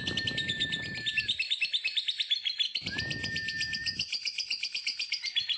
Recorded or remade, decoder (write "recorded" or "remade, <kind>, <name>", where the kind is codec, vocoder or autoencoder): recorded